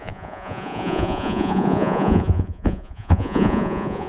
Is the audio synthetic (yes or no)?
yes